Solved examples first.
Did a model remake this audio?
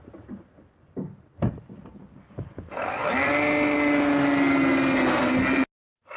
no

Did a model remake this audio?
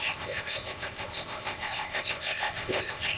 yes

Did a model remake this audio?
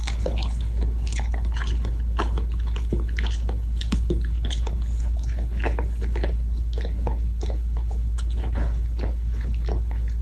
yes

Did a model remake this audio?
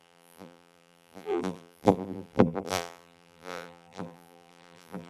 yes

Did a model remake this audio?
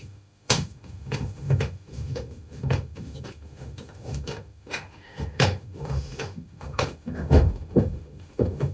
yes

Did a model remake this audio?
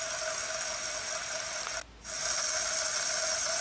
no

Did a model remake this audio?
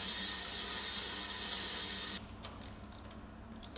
no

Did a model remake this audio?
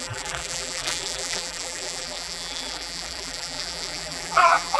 yes